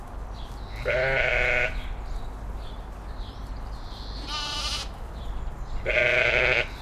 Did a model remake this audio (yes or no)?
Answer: no